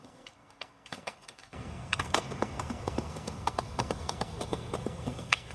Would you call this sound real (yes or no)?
no